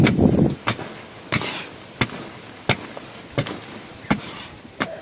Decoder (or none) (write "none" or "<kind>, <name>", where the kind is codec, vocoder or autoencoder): none